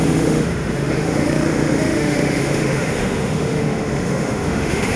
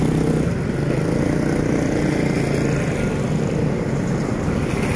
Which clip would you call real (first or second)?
second